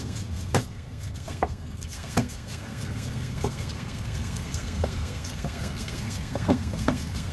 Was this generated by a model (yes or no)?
yes